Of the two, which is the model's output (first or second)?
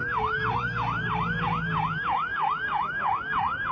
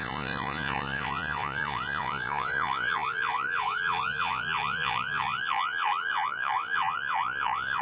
second